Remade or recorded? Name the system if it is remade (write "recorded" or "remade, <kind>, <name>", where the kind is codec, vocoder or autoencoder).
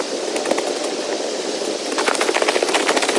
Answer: recorded